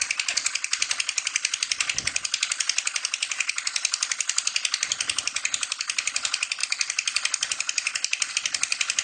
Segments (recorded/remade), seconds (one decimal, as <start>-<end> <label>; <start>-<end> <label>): 0.0-9.0 recorded